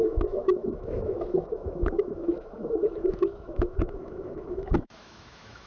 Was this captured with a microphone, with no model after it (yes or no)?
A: no